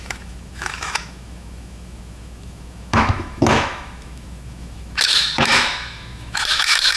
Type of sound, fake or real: fake